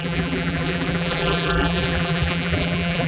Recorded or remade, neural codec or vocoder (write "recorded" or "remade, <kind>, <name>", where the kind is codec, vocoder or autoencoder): remade, vocoder, BigVGAN v2